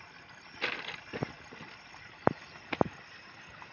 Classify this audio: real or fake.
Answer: real